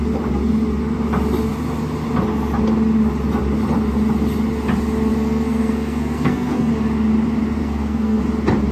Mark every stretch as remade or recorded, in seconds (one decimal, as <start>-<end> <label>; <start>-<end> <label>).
0.0-5.1 recorded; 5.1-6.7 remade; 6.7-7.6 recorded; 7.6-8.2 remade; 8.2-8.7 recorded